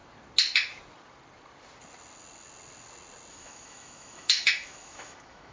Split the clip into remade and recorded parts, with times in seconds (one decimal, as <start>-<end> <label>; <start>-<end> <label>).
0.0-3.3 recorded; 3.3-5.5 remade